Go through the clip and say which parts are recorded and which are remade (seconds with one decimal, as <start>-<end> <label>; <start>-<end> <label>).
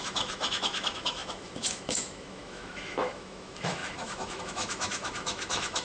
0.0-5.8 remade